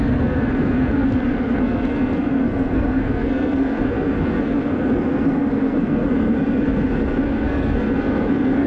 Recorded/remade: remade